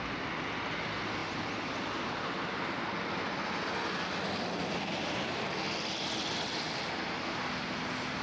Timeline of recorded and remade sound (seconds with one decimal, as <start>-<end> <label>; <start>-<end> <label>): 0.0-8.2 recorded